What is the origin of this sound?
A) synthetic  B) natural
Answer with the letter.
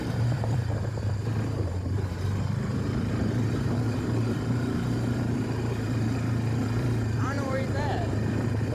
A